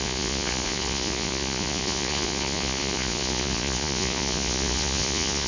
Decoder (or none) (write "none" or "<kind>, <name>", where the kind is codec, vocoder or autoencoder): vocoder, Vocos